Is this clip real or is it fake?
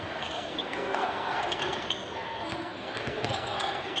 fake